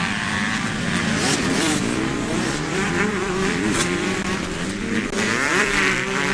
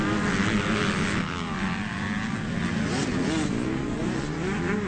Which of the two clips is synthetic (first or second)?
first